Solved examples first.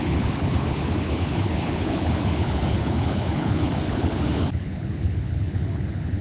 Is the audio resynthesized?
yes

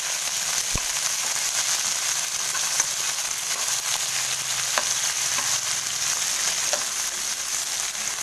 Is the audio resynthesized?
no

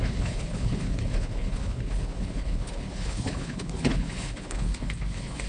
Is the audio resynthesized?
yes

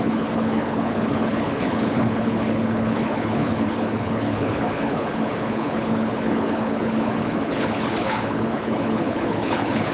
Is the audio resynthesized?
yes